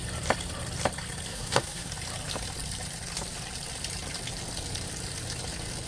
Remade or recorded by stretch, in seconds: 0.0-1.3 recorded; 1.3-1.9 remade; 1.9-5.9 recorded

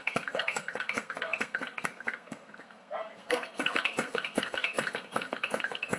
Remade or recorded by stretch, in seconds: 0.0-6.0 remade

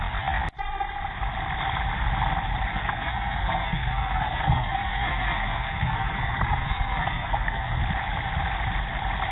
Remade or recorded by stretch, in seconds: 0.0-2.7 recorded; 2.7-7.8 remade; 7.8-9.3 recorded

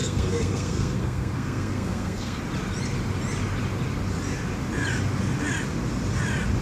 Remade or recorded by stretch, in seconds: 0.0-2.4 remade; 2.4-6.6 recorded

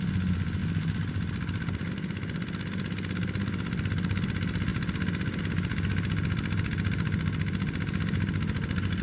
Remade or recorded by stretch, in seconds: 0.0-9.0 recorded

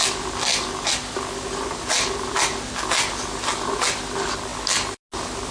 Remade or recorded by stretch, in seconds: 0.0-5.5 recorded

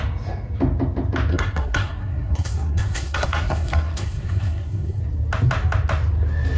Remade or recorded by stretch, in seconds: 0.0-1.3 recorded; 1.3-5.0 remade; 5.0-6.6 recorded